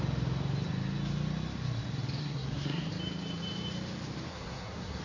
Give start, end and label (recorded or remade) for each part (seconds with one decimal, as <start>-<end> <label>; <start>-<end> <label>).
0.0-2.2 recorded; 2.2-2.9 remade; 2.9-4.3 recorded; 4.3-5.0 remade